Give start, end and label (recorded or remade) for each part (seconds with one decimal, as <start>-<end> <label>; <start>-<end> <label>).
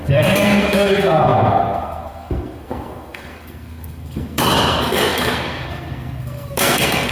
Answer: 0.0-7.1 remade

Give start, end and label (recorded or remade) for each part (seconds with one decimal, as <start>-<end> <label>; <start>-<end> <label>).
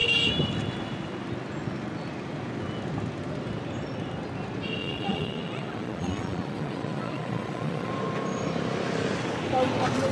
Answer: 0.0-4.8 recorded; 4.8-7.9 remade; 7.9-10.1 recorded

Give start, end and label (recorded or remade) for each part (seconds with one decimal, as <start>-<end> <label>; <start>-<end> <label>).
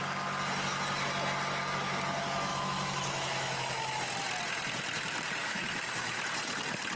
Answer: 0.0-2.5 recorded; 2.5-4.0 remade; 4.0-5.4 recorded; 5.4-6.2 remade; 6.2-7.0 recorded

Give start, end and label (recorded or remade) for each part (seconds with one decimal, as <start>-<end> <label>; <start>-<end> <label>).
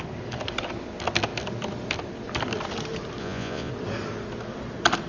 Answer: 0.0-3.2 recorded; 3.2-3.7 remade; 3.7-5.1 recorded